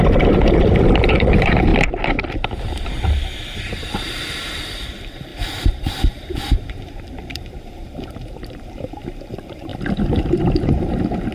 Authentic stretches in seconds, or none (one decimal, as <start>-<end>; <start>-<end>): 1.7-2.9; 9.7-10.3